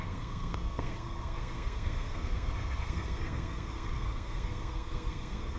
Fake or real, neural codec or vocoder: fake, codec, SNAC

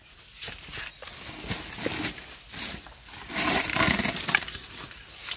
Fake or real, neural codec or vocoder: real